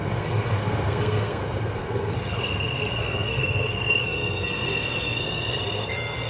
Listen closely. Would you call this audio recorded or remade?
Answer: remade